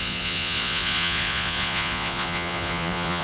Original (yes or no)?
no